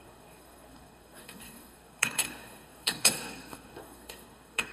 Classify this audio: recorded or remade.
remade